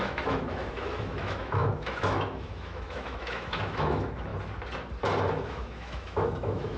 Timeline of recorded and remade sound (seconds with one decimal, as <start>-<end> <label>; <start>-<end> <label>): 0.0-4.3 remade; 4.3-5.3 recorded; 5.3-6.8 remade